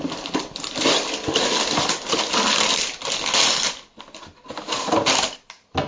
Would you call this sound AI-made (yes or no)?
no